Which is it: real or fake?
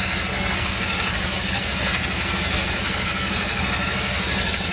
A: fake